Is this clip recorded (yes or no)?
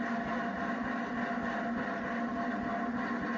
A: yes